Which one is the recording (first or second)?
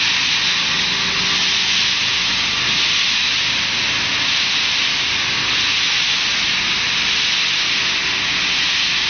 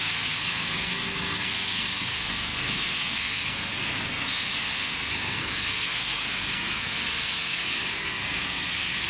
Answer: first